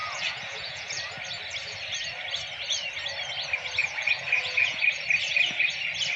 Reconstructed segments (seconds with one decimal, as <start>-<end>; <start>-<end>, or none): 0.0-1.0; 3.8-4.8